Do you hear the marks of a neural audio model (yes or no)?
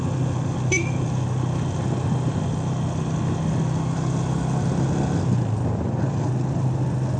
no